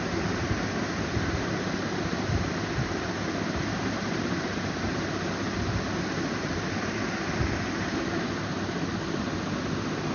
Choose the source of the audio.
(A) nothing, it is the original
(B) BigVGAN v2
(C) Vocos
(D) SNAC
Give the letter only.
A